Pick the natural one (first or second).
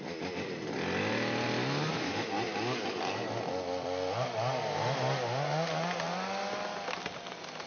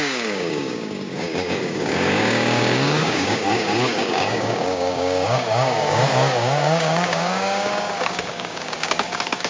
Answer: first